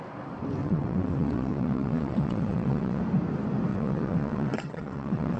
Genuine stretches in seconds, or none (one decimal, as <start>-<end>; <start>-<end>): 0.0-0.6; 3.0-3.7